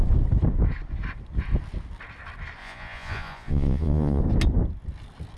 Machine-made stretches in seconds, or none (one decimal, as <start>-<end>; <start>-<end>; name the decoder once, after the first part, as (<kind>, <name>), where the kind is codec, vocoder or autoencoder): 2.6-4.2 (vocoder, Vocos)